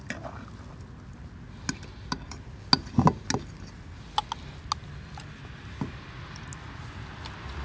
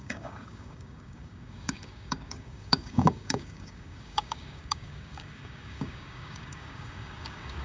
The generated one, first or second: second